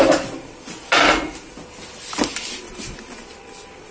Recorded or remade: recorded